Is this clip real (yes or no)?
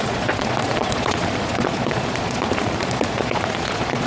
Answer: no